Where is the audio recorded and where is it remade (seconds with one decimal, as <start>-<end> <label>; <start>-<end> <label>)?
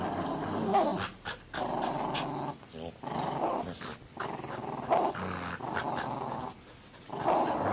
0.0-7.7 recorded